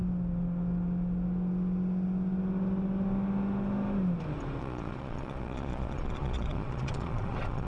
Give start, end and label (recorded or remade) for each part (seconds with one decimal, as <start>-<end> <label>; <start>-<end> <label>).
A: 0.0-4.6 recorded; 4.6-7.7 remade